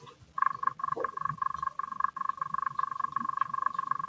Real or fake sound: real